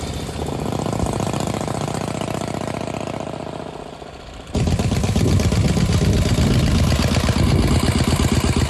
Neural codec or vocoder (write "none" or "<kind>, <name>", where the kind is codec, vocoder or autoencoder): none